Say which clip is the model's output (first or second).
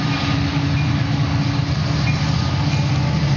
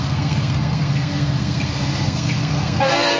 second